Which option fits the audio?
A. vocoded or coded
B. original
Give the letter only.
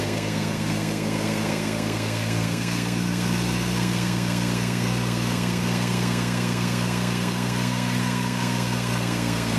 A